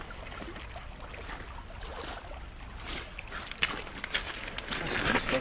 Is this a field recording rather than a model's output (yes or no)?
yes